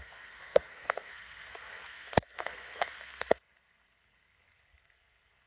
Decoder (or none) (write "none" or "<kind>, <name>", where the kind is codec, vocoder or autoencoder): codec, SNAC